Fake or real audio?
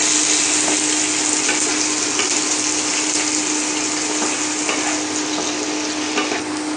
real